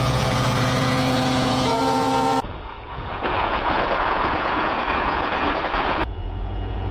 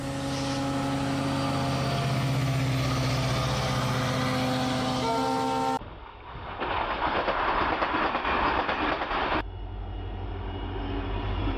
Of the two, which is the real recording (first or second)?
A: second